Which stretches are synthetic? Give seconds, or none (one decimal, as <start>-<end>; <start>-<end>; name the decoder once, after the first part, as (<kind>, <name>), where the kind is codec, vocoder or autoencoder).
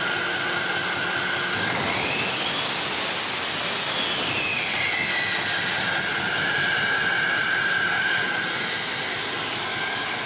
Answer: none